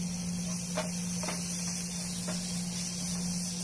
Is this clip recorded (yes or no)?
yes